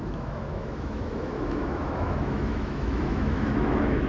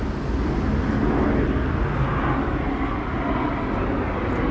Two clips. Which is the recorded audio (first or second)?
second